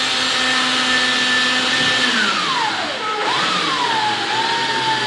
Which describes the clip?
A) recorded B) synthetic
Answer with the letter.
A